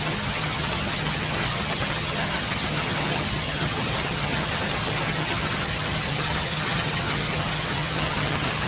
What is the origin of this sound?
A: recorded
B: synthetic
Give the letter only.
B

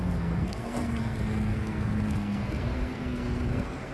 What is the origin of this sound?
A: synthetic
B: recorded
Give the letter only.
A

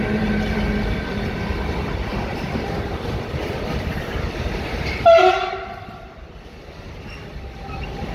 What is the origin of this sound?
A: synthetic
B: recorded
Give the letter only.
A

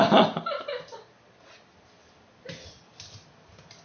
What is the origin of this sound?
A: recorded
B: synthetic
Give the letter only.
A